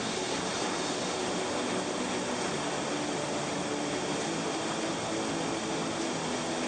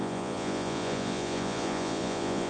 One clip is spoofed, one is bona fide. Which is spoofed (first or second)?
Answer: second